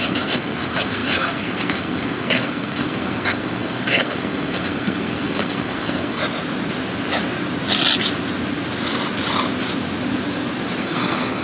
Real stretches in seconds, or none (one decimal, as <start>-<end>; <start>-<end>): 6.2-10.8